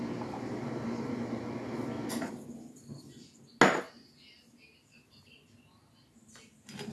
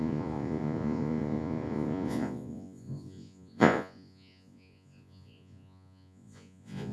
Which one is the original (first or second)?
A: first